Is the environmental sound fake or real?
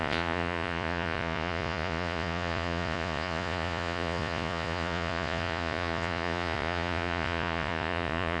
fake